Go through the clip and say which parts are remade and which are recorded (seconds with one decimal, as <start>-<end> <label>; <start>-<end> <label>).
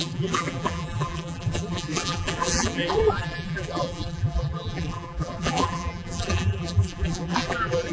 0.0-7.9 remade